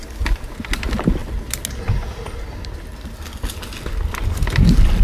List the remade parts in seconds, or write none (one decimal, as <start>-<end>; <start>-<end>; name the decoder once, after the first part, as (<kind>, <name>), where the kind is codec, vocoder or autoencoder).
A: none